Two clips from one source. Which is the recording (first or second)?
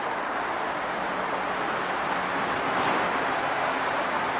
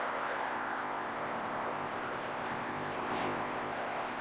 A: first